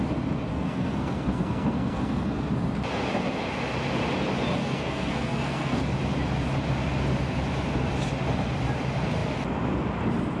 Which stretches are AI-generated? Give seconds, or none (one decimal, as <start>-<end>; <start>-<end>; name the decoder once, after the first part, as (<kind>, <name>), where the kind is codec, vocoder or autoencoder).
0.5-2.5 (codec, SNAC); 4.6-5.8